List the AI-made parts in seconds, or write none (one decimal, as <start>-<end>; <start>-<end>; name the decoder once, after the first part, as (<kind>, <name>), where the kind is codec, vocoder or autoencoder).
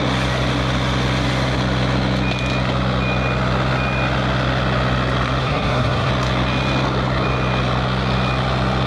5.4-6.1 (codec, SNAC)